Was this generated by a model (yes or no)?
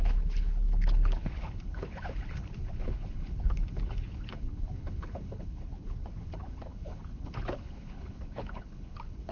yes